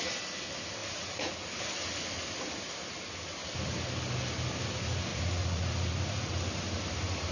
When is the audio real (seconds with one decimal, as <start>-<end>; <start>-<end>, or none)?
0.0-0.8; 1.3-5.1; 6.3-7.3

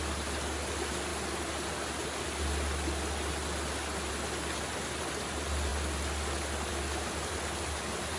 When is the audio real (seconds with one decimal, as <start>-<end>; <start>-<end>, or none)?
0.0-8.2